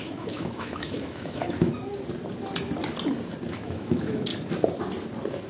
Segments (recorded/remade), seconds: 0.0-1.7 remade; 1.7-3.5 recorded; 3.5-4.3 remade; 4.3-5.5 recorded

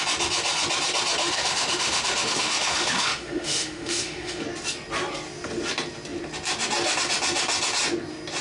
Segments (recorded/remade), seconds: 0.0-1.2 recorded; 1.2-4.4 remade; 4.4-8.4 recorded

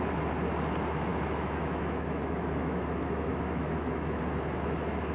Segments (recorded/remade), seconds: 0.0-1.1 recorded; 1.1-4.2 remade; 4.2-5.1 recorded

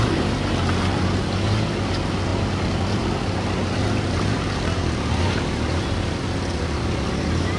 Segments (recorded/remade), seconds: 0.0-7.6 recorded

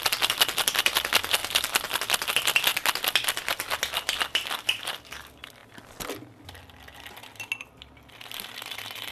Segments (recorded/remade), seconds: 0.0-9.1 recorded

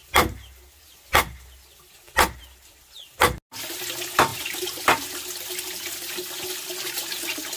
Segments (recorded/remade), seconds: 0.0-7.6 recorded

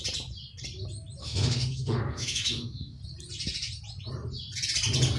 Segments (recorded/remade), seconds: 0.0-1.2 recorded; 1.2-3.0 remade; 3.0-5.2 recorded